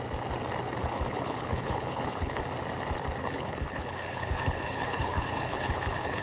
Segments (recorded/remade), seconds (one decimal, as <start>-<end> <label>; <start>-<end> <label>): 0.0-0.8 recorded; 0.8-2.4 remade; 2.4-3.2 recorded; 3.2-6.2 remade